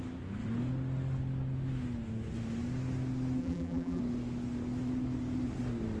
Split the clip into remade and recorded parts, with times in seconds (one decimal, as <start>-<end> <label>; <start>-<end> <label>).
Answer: 0.0-3.4 recorded; 3.4-4.0 remade; 4.0-6.0 recorded